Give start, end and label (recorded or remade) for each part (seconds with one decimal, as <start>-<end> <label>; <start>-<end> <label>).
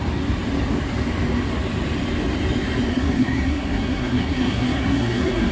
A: 0.0-2.9 recorded; 2.9-5.5 remade